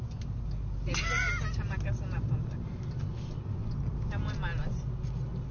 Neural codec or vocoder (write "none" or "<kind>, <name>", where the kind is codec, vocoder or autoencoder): none